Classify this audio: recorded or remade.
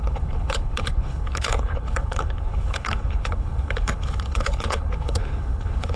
remade